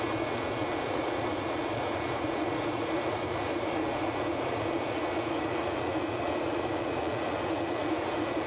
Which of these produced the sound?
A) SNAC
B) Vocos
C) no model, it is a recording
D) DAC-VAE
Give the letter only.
B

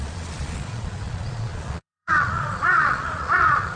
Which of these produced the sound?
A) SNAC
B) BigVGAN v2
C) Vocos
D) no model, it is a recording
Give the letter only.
C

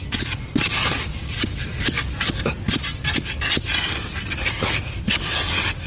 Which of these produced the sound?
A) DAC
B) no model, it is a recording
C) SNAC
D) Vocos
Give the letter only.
B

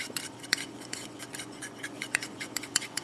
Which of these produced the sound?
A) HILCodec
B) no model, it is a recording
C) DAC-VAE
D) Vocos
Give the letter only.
D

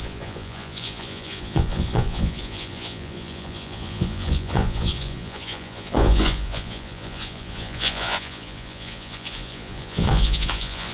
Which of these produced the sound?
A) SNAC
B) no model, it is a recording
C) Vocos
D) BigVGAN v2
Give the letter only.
C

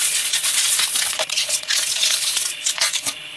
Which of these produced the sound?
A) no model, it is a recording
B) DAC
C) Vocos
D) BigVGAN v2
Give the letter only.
C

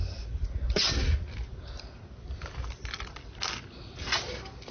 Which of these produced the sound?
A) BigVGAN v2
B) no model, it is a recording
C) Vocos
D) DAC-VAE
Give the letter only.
B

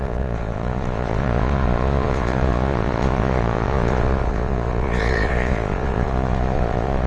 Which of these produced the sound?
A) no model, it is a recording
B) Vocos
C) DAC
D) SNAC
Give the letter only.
B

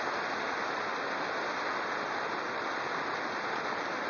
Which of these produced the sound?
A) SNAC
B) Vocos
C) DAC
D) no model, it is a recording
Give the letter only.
D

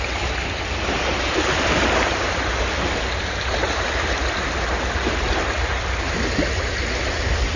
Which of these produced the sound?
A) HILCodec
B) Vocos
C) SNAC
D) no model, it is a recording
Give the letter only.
D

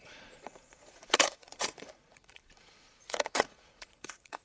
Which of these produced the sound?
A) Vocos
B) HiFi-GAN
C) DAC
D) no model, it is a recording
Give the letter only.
A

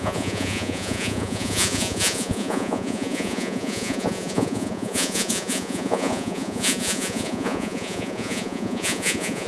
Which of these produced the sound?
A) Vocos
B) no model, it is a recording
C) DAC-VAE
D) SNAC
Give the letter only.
A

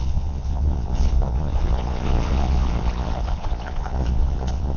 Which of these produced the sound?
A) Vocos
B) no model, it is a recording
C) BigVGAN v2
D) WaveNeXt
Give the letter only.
A